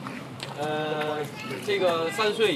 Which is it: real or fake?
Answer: fake